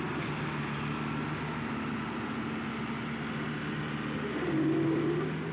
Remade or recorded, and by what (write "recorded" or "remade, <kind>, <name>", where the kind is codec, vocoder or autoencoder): recorded